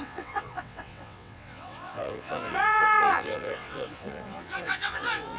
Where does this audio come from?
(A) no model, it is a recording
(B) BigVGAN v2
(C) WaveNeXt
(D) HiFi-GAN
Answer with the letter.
C